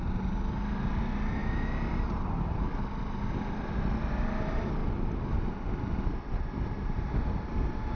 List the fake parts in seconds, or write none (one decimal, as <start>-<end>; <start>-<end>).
none